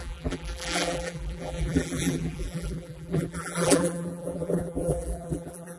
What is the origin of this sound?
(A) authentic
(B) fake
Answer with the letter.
B